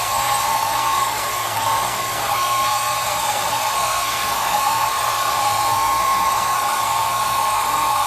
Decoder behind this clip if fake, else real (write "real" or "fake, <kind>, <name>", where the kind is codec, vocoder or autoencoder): fake, codec, SNAC